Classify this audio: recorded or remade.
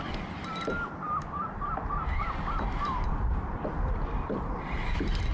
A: recorded